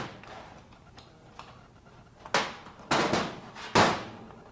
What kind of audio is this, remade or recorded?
recorded